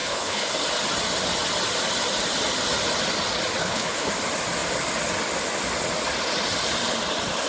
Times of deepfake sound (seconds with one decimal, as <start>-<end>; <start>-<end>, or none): 0.0-0.5; 3.6-4.1